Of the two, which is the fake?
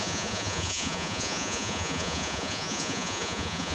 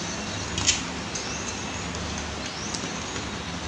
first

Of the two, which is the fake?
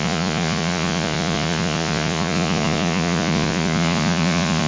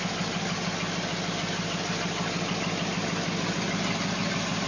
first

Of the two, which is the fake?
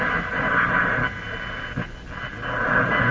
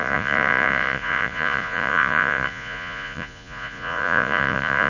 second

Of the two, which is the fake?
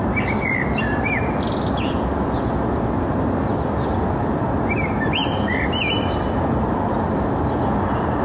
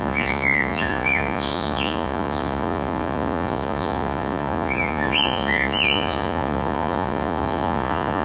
second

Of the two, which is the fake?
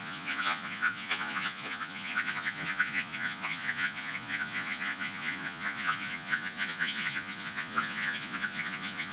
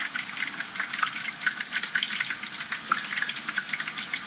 first